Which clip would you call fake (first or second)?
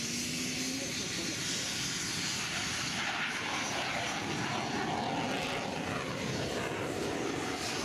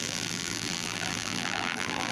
second